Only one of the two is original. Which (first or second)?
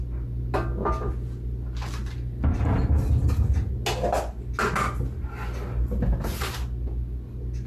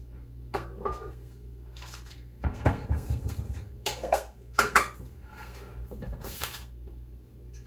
first